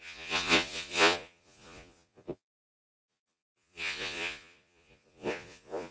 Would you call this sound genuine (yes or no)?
no